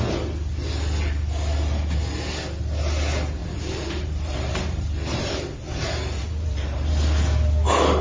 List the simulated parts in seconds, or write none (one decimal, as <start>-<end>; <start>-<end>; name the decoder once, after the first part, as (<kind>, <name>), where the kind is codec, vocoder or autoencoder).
3.4-5.4 (vocoder, BigVGAN v2); 6.2-6.9